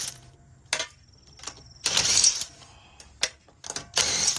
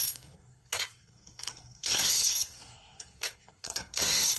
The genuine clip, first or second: first